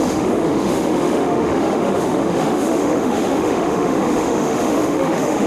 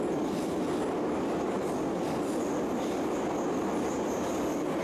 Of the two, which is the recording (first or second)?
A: second